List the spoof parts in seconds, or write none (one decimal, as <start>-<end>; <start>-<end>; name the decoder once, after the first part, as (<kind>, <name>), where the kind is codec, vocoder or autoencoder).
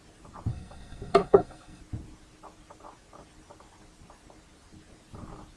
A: 0.5-1.8 (codec, SNAC)